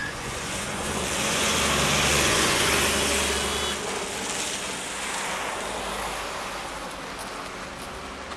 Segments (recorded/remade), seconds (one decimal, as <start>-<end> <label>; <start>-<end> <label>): 0.0-1.6 remade; 1.6-2.1 recorded; 2.1-2.7 remade; 2.7-8.4 recorded